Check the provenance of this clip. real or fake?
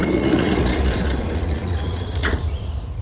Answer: fake